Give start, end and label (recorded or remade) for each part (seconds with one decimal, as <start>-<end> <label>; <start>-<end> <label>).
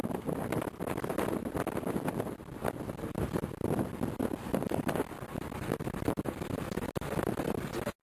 0.0-8.1 recorded